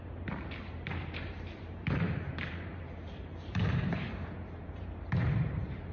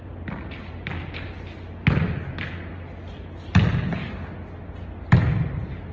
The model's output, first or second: first